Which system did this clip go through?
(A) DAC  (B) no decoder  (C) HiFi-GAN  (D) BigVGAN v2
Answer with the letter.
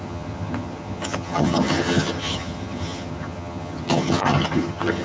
C